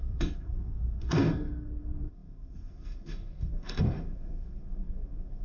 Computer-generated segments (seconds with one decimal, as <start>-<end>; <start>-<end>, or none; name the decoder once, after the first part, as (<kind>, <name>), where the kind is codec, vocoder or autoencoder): 0.0-5.4 (codec, SNAC)